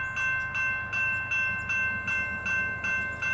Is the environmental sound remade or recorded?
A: recorded